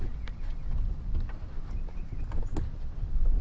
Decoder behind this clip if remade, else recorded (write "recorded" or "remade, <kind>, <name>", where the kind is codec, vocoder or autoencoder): recorded